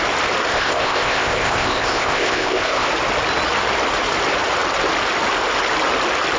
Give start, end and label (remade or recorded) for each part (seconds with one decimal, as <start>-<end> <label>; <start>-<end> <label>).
0.0-0.5 recorded; 0.5-2.9 remade; 2.9-6.4 recorded